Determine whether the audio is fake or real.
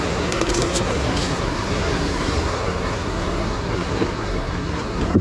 fake